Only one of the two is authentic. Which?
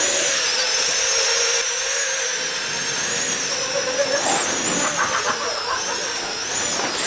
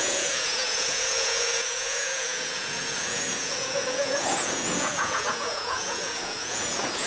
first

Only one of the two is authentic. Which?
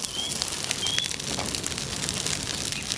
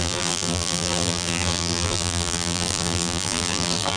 first